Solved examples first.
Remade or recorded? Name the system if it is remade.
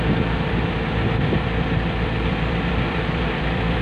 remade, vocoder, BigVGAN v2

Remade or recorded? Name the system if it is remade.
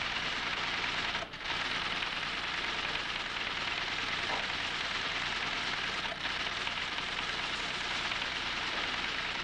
remade, vocoder, BigVGAN v2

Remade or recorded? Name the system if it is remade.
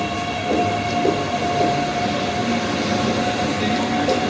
recorded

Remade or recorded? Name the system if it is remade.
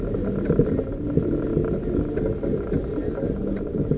recorded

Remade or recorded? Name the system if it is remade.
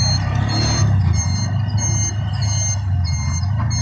recorded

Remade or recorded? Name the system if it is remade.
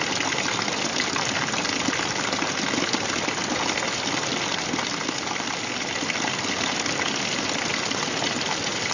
recorded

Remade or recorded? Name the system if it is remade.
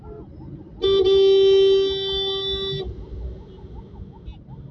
recorded